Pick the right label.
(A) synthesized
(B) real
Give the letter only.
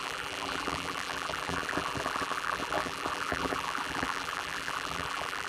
A